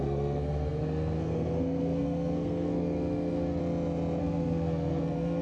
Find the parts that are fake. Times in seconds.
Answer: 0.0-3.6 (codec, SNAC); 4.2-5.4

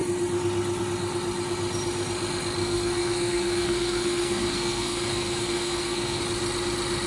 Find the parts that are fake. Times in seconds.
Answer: 2.6-6.2 (codec, SNAC)

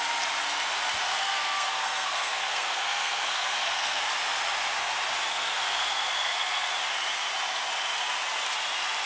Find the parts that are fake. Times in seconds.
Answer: 1.1-4.1 (codec, SNAC); 5.3-6.7

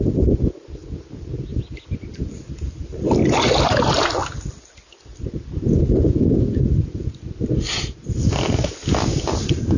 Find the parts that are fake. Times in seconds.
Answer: none

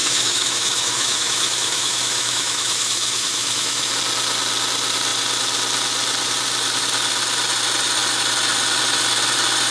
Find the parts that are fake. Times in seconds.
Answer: 0.0-3.9 (autoencoder, DAC-VAE)

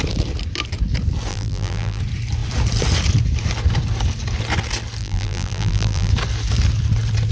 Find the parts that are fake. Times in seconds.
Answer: 1.3-2.0 (vocoder, BigVGAN v2); 5.0-6.1

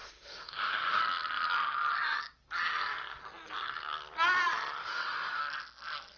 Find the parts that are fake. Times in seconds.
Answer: 0.0-1.0 (autoencoder, DAC-VAE); 4.8-5.4

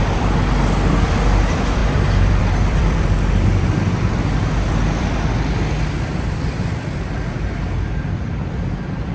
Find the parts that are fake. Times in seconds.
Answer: 0.0-9.1 (vocoder, BigVGAN v2)